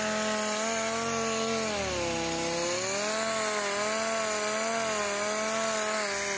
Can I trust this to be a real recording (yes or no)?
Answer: yes